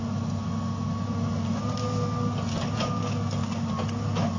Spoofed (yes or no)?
no